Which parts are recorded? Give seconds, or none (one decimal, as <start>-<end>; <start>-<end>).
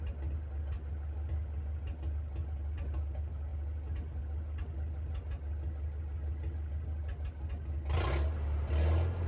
0.0-9.3